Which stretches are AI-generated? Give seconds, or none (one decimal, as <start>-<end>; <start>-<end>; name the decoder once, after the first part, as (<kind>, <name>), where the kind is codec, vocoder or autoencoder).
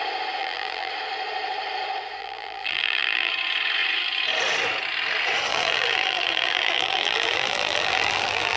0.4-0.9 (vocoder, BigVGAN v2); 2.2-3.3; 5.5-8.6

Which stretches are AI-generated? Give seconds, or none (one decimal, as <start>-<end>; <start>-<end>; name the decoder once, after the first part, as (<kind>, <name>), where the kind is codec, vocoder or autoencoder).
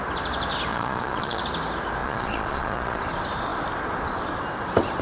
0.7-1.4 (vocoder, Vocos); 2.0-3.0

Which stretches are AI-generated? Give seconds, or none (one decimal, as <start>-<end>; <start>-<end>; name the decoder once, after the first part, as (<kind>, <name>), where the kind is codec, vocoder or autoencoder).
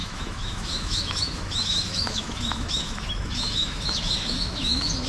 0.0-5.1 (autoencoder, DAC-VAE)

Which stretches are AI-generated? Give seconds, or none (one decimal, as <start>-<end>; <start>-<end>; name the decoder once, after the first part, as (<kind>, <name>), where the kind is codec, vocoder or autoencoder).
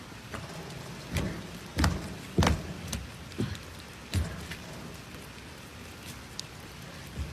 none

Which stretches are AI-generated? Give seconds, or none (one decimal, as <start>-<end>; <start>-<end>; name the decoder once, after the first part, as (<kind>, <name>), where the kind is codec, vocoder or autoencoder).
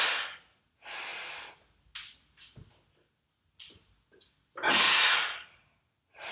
none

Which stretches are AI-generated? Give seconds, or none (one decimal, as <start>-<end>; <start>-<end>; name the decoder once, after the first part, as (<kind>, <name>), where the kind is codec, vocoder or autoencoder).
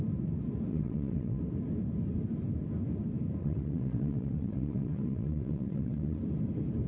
0.7-1.4 (vocoder, WaveNeXt); 3.4-6.2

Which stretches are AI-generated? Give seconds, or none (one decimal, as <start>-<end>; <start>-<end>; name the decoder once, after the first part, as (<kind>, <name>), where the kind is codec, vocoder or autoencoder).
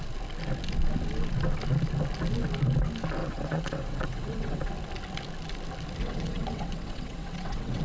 3.2-4.7 (vocoder, WaveNeXt); 6.0-7.8